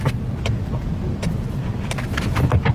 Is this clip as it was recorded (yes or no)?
yes